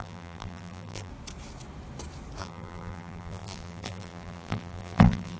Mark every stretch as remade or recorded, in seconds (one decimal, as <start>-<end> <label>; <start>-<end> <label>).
0.0-1.1 remade; 1.1-2.4 recorded; 2.4-5.4 remade